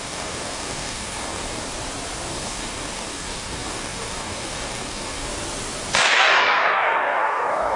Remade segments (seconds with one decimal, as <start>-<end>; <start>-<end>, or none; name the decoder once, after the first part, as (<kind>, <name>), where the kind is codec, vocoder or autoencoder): 0.0-1.6 (codec, DAC); 2.3-5.3; 6.0-7.8